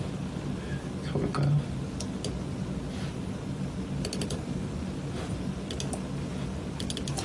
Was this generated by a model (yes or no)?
no